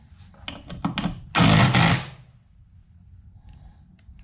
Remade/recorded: recorded